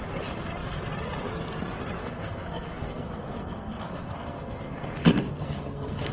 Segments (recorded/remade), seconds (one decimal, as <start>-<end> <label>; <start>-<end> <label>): 0.0-2.0 recorded; 2.0-6.1 remade